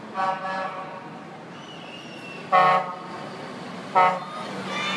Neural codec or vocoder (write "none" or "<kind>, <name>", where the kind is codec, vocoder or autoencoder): none